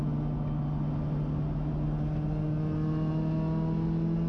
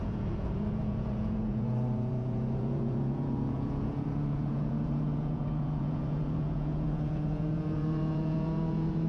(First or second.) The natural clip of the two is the first